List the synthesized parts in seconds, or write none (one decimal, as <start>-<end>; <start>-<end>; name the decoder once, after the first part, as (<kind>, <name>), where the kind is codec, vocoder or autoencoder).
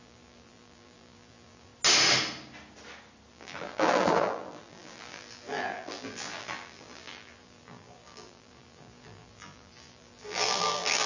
0.0-1.7 (vocoder, BigVGAN v2); 3.3-11.1